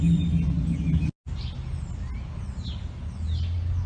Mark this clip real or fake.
real